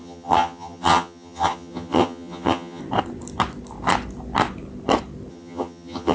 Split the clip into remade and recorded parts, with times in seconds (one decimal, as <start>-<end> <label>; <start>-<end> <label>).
0.0-2.8 remade; 2.8-5.3 recorded; 5.3-6.1 remade

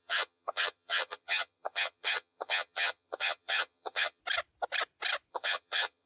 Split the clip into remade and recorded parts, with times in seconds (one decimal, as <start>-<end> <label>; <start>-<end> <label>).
0.0-4.2 remade; 4.2-5.3 recorded; 5.3-6.1 remade

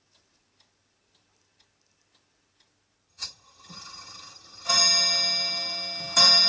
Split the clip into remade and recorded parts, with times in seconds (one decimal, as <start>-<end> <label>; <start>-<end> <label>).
0.0-3.1 recorded; 3.1-4.7 remade; 4.7-6.5 recorded

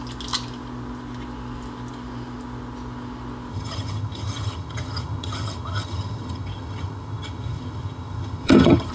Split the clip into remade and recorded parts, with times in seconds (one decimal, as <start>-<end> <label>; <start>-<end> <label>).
0.0-3.5 recorded; 3.5-8.9 remade

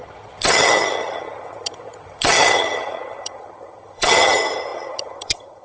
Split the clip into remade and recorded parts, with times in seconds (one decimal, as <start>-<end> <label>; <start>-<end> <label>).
0.0-5.6 remade

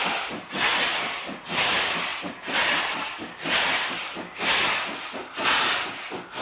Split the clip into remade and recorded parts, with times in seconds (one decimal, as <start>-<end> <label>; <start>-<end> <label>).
0.0-6.4 recorded

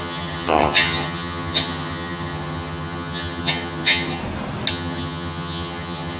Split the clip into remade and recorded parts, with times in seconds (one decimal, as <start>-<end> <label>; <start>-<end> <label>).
0.0-4.2 remade; 4.2-4.7 recorded; 4.7-6.2 remade